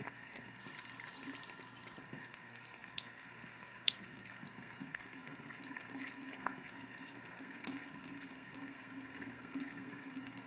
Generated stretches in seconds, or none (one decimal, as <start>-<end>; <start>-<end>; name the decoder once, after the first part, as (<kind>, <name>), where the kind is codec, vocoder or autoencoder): 0.0-0.6 (codec, SNAC); 2.0-10.5